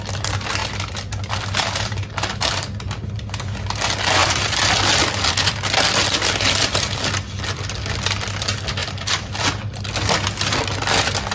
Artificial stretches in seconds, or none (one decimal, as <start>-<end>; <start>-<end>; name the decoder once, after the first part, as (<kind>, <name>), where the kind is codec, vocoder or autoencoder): 4.2-4.7 (vocoder, BigVGAN v2); 8.8-9.3